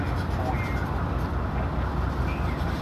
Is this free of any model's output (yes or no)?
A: yes